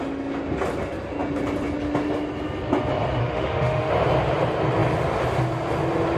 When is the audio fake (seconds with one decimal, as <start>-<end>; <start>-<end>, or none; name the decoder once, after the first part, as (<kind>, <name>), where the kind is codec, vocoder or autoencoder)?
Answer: 3.2-3.9 (autoencoder, DAC-VAE)